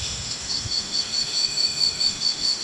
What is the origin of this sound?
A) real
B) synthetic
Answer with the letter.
B